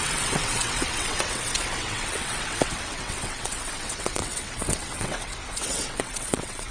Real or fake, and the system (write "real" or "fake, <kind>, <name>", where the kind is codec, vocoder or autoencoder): fake, vocoder, WaveNeXt